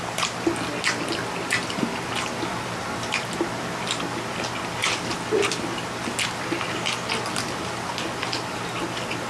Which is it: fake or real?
real